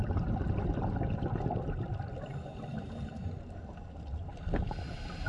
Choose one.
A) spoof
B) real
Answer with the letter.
B